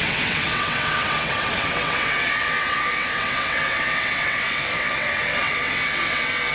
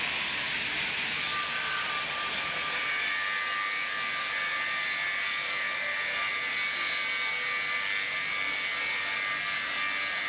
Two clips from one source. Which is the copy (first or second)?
first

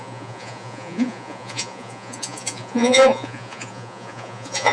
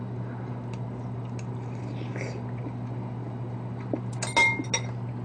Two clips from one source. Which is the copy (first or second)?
first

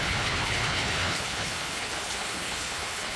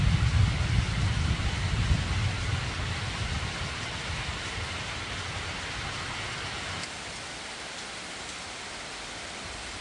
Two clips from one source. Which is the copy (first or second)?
first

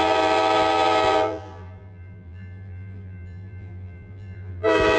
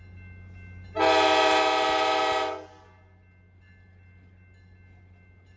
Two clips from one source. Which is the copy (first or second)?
first